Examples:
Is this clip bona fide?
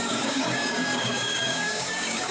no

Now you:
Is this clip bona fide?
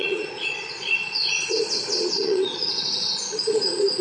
no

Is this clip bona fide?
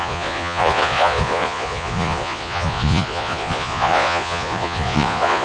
no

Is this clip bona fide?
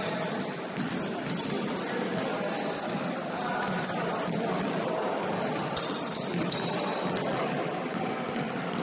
no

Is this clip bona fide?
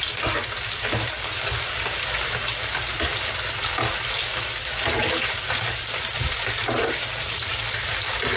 yes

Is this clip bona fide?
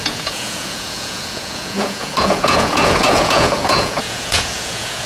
no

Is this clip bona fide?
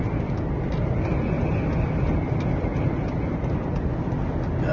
yes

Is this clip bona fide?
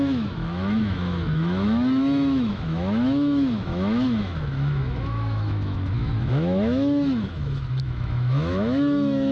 no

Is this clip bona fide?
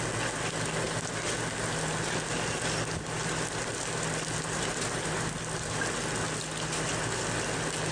yes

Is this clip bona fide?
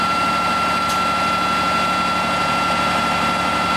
yes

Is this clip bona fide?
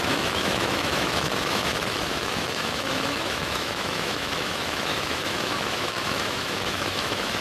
no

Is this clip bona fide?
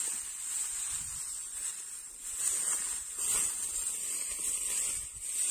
yes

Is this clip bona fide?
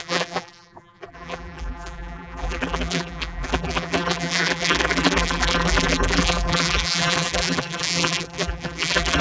no